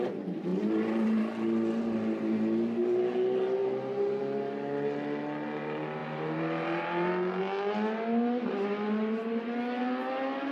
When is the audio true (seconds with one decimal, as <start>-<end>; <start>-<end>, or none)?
0.0-0.5; 1.8-6.0; 7.4-10.5